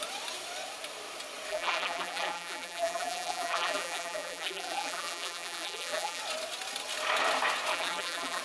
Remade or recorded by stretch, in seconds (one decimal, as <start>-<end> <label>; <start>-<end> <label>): 0.0-1.5 recorded; 1.5-6.2 remade; 6.2-7.7 recorded; 7.7-8.4 remade